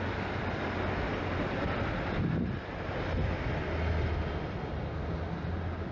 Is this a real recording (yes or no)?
yes